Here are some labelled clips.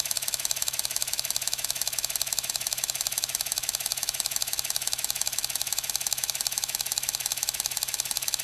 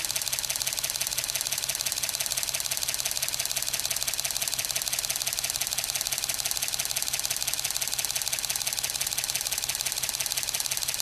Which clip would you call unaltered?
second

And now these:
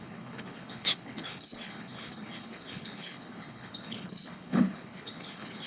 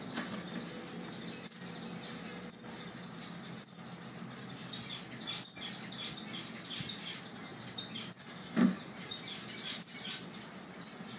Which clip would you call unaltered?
second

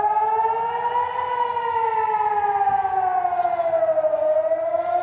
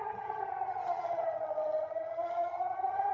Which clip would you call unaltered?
first